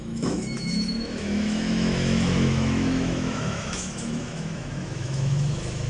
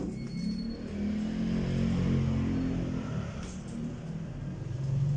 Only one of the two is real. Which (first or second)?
second